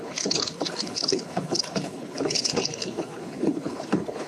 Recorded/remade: remade